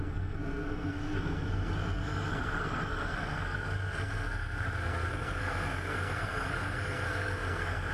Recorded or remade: remade